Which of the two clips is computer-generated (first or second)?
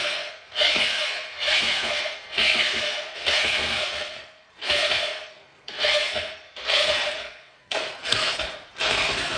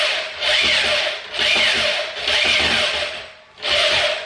first